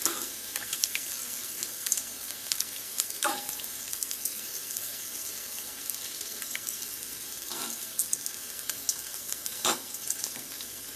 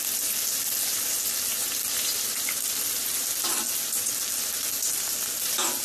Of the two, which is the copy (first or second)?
first